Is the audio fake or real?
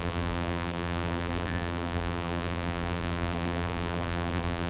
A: fake